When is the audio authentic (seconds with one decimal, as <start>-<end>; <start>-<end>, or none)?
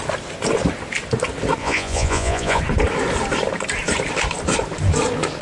0.0-1.6; 2.6-5.4